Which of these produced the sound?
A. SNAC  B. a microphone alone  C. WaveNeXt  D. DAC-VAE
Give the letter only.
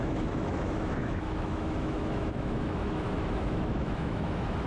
D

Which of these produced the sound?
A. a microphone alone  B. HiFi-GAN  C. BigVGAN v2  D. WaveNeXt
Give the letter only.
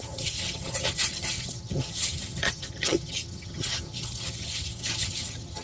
B